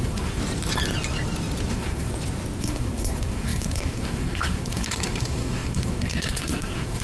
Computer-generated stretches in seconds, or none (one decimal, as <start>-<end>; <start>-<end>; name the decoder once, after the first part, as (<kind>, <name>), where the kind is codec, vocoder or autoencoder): 0.0-0.4 (codec, SNAC); 1.7-2.1; 2.6-7.0